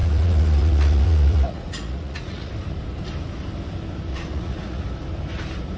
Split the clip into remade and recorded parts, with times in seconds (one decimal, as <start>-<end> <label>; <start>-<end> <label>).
0.0-2.5 remade; 2.5-4.1 recorded; 4.1-4.8 remade; 4.8-5.8 recorded